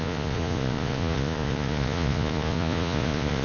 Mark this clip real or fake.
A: fake